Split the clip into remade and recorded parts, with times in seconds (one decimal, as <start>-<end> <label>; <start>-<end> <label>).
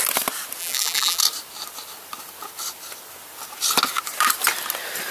0.0-0.6 recorded; 0.6-1.2 remade; 1.2-5.1 recorded